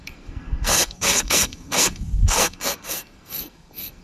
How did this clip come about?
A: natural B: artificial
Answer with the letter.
B